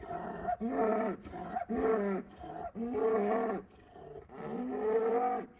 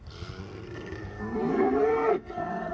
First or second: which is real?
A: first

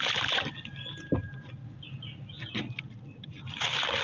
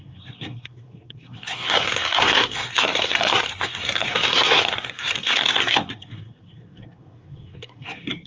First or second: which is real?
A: first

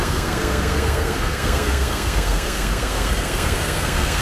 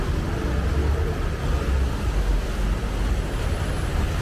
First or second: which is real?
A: second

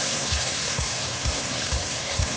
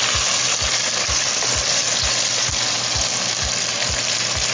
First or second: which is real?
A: second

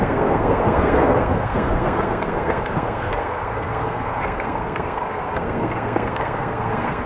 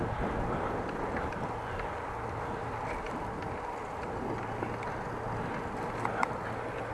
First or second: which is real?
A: second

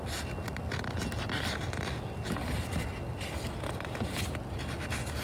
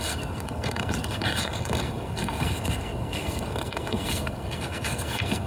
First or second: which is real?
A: first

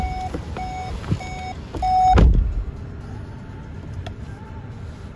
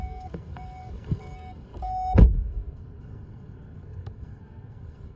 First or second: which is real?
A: first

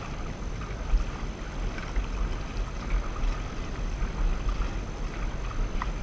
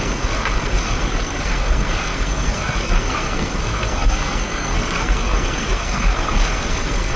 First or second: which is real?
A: first